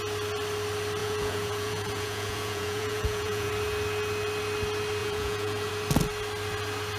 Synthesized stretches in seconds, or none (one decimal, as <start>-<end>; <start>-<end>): 1.0-3.5; 5.0-5.7